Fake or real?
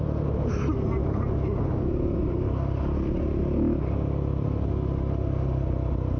real